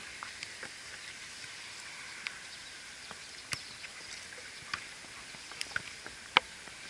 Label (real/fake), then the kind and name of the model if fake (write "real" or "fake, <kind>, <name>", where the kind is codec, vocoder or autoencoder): real